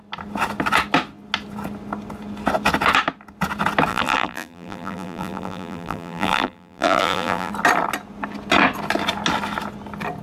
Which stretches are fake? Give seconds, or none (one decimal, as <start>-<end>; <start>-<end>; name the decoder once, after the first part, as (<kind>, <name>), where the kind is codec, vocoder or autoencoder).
3.9-7.5 (vocoder, BigVGAN v2)